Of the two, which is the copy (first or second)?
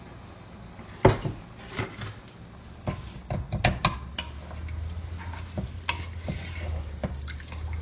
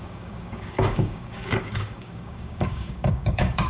second